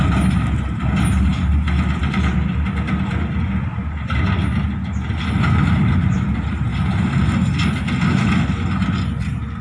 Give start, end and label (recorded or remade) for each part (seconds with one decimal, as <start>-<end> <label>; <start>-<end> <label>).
0.0-9.6 recorded